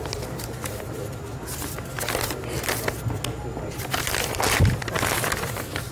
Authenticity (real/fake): real